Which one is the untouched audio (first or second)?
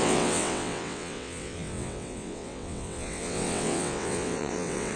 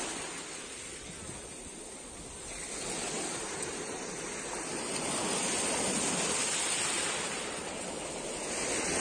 second